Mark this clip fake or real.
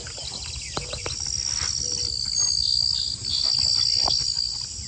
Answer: real